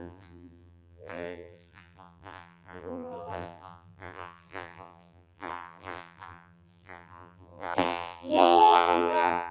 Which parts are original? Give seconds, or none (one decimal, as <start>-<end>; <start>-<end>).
none